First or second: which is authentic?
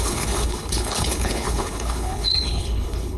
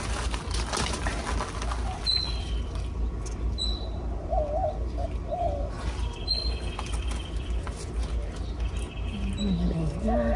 second